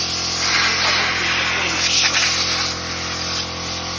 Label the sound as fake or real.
real